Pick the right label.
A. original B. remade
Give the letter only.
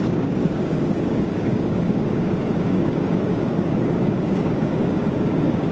B